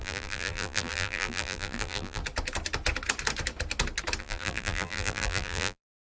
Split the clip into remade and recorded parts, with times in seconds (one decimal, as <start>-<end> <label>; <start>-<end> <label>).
0.0-2.2 remade; 2.2-4.2 recorded; 4.2-6.0 remade